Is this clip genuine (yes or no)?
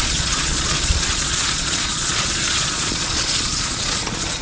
no